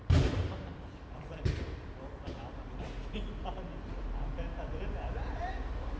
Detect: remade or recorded remade